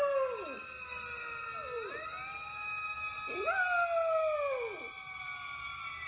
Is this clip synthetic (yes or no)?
no